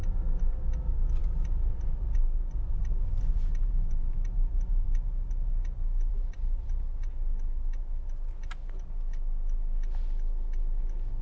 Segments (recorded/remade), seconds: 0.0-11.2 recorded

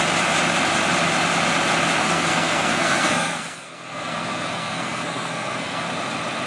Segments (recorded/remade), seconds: 0.0-2.0 recorded; 2.0-5.9 remade; 5.9-6.5 recorded

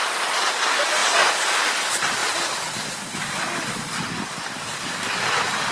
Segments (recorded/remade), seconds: 0.0-5.7 recorded

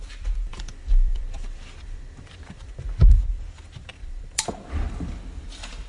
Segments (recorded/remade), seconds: 0.0-5.9 remade

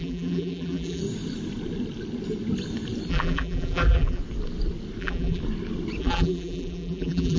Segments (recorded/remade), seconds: 0.0-1.0 remade; 1.0-3.1 recorded; 3.1-4.2 remade; 4.2-5.0 recorded; 5.0-5.4 remade; 5.4-6.0 recorded; 6.0-7.4 remade

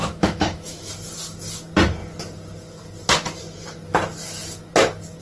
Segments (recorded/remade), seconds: 0.0-0.9 remade; 0.9-5.2 recorded

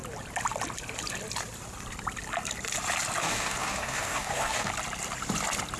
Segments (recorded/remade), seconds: 0.0-3.2 recorded; 3.2-4.7 remade; 4.7-5.8 recorded

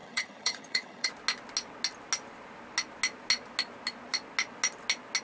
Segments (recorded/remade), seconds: 0.0-1.1 remade; 1.1-5.2 recorded